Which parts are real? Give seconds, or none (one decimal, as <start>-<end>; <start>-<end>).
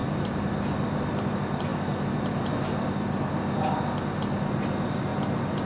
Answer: 0.5-5.7